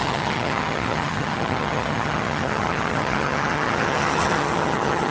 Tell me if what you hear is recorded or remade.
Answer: remade